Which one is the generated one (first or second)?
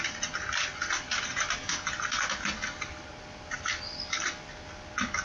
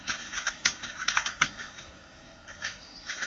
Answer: second